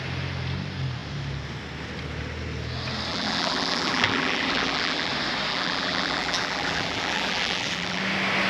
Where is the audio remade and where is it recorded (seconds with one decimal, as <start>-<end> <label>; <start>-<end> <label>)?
0.0-3.1 recorded; 3.1-5.1 remade; 5.1-5.5 recorded; 5.5-8.0 remade; 8.0-8.5 recorded